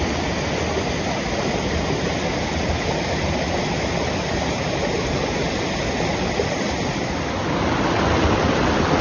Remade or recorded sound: recorded